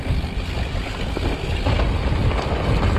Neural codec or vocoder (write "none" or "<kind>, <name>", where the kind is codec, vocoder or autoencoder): none